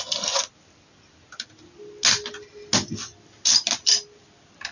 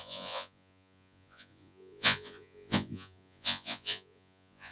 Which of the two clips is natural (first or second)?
first